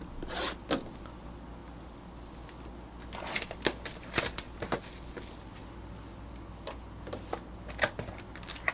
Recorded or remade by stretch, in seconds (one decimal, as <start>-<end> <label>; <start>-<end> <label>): 0.0-8.7 recorded

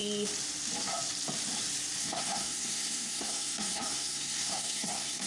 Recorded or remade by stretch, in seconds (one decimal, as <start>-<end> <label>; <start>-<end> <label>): 0.0-2.0 recorded; 2.0-5.3 remade

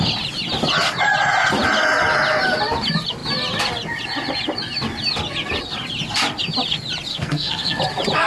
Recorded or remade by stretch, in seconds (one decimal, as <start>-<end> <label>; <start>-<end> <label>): 0.0-7.1 recorded; 7.1-7.8 remade; 7.8-8.3 recorded